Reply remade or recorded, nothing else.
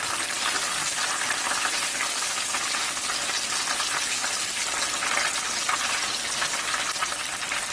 recorded